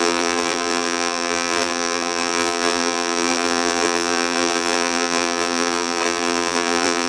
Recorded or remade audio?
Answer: remade